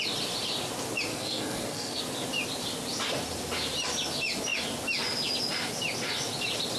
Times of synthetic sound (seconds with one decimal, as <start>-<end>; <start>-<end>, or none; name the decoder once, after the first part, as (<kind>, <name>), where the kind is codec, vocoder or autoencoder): 1.1-2.0 (codec, SNAC)